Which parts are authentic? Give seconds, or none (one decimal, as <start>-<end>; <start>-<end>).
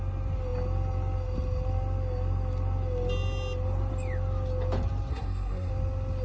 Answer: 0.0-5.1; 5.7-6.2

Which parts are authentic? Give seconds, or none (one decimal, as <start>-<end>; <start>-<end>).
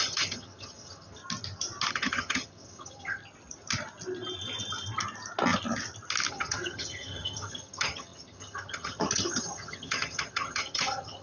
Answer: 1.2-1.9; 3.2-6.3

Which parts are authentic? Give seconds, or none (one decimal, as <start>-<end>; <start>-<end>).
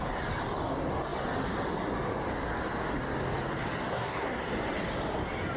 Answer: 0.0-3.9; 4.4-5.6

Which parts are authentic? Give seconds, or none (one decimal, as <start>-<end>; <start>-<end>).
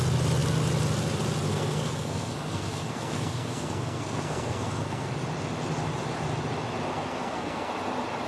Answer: 0.0-1.5; 5.1-6.9; 7.7-8.3